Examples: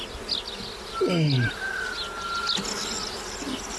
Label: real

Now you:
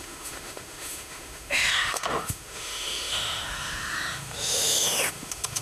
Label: fake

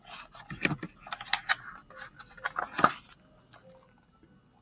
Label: real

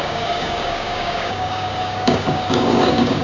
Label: fake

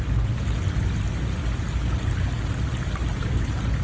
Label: real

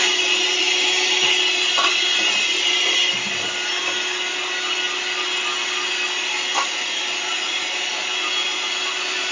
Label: real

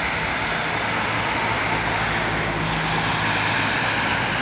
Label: real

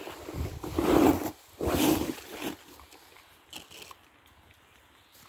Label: real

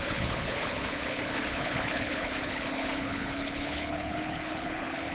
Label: fake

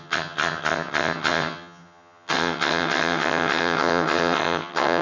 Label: fake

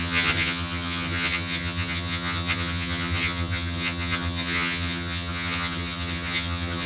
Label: fake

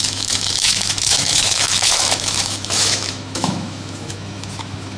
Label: fake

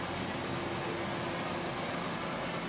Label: real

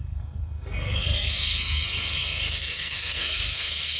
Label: fake